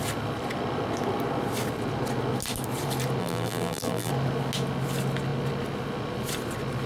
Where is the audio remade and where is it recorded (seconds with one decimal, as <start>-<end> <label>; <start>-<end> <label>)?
0.0-3.2 recorded; 3.2-4.1 remade; 4.1-6.9 recorded